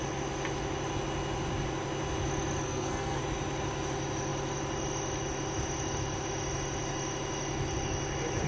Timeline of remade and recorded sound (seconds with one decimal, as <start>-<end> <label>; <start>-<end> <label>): 0.0-2.6 recorded; 2.6-3.2 remade; 3.2-8.5 recorded